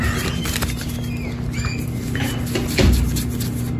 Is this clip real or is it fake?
real